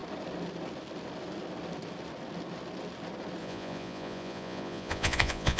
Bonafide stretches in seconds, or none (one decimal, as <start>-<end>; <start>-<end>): 0.0-3.4